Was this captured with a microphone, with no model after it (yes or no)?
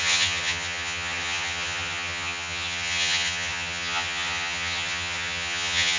no